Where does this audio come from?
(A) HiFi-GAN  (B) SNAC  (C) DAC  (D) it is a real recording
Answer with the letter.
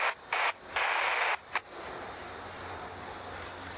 D